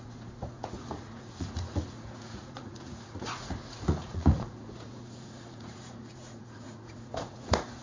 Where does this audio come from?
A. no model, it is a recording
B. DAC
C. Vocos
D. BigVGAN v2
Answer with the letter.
C